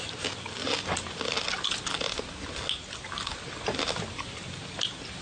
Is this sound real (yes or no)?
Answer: yes